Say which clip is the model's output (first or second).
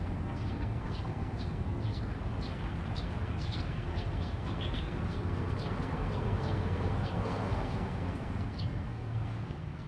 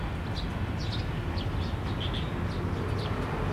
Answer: first